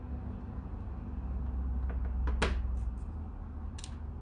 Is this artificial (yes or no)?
no